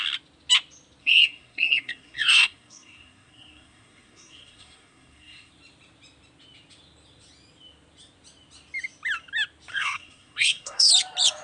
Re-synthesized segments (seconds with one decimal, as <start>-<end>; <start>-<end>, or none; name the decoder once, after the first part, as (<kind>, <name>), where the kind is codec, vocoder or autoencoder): 1.0-5.5 (codec, SNAC); 9.7-10.9